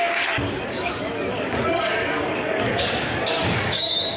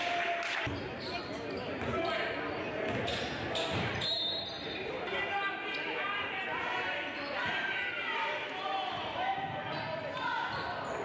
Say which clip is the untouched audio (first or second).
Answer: second